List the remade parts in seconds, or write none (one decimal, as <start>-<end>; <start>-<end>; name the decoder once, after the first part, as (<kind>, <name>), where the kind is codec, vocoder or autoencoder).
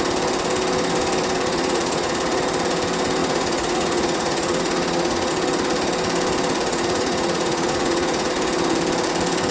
1.5-2.4 (vocoder, Vocos); 3.2-5.3; 6.7-8.3